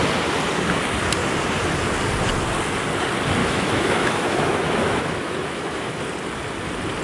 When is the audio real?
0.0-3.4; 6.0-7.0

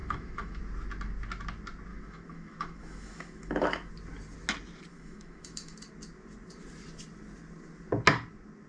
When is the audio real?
0.6-1.9; 3.9-4.9; 5.9-8.7

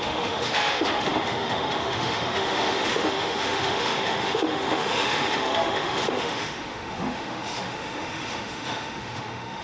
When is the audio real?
none

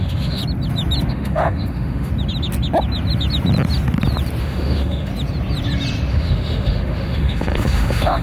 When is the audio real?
0.4-1.1; 2.1-4.4; 5.1-6.1

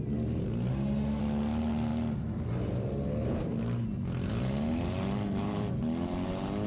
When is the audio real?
0.0-0.7; 1.2-6.7